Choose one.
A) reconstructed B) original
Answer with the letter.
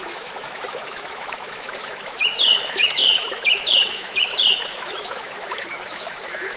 A